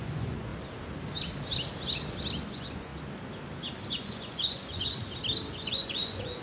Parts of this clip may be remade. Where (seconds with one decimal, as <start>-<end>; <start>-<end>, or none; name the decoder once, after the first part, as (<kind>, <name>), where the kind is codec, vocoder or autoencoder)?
0.0-0.5 (vocoder, Vocos); 2.5-2.9; 3.9-5.0; 5.5-6.4